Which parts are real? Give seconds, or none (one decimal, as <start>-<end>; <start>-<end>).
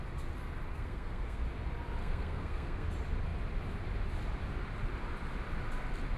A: 0.0-0.7; 1.4-2.0; 2.9-6.2